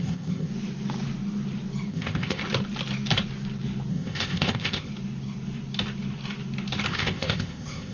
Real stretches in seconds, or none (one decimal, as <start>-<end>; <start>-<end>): 0.5-1.9; 2.4-3.9; 4.9-6.9